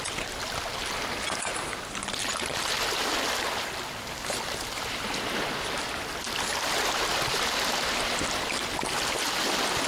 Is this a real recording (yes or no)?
yes